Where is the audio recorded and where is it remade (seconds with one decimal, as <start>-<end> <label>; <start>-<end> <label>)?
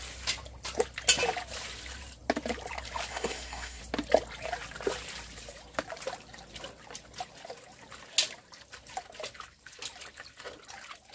0.0-3.1 recorded; 3.1-3.8 remade; 3.8-11.1 recorded